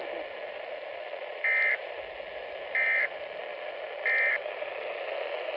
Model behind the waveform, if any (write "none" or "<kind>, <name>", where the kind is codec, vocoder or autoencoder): vocoder, BigVGAN v2